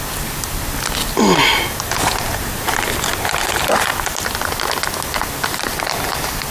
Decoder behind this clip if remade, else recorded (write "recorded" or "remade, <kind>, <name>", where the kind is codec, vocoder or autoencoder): recorded